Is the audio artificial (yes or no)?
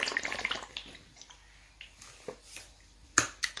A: no